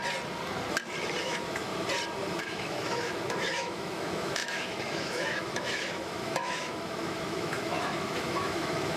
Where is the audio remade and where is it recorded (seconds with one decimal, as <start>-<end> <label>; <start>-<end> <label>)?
0.0-1.2 recorded; 1.2-1.7 remade; 1.7-2.4 recorded; 2.4-9.0 remade